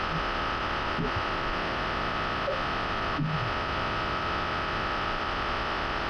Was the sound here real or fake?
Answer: real